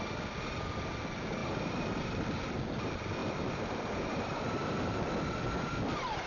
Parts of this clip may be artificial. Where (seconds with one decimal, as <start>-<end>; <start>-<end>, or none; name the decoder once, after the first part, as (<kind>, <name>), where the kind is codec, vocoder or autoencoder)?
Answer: 1.4-1.9 (vocoder, BigVGAN v2); 3.2-5.1